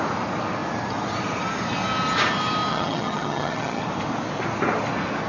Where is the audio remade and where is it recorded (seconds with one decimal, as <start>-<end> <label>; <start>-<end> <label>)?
0.0-2.7 recorded; 2.7-3.8 remade; 3.8-5.3 recorded